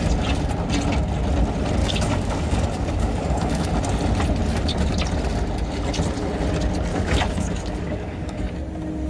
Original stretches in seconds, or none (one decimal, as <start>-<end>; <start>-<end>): 0.0-1.8; 3.7-6.9; 8.5-9.1